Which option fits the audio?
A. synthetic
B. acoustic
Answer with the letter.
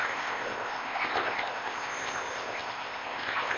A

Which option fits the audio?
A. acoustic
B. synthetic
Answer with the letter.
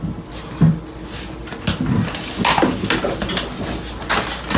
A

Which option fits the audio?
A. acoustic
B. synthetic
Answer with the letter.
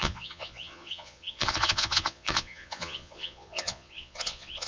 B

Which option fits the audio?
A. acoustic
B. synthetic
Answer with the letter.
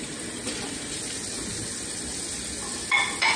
A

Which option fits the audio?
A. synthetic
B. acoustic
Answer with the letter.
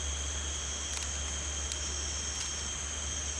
B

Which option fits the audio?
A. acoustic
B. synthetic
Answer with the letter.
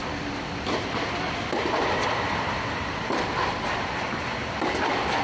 B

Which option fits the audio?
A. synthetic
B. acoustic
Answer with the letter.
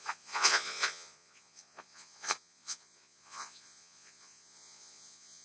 A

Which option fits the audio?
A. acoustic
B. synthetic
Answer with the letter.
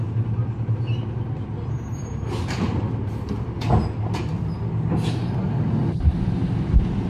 A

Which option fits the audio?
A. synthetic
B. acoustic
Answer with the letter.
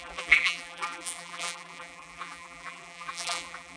A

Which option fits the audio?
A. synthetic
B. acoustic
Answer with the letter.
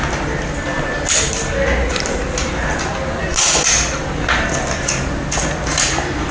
B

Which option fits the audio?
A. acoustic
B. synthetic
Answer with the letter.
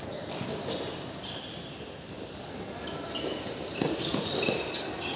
A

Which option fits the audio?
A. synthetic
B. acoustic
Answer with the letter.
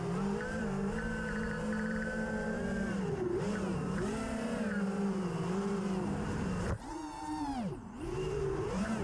A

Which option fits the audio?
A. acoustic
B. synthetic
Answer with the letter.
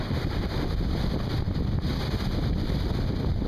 B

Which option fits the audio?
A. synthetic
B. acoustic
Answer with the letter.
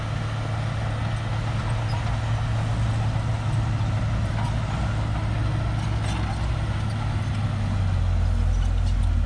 B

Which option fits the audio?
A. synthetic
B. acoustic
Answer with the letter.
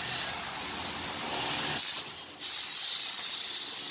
B